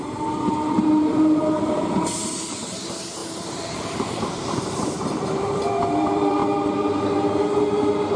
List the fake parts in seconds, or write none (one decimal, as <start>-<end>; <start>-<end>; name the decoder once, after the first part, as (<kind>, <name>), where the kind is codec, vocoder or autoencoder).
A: 0.0-6.4 (vocoder, BigVGAN v2)